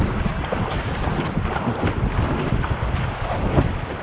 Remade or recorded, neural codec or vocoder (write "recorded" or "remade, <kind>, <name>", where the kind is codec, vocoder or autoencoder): recorded